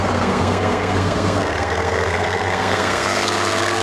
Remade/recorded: remade